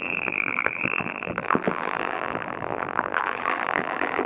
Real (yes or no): no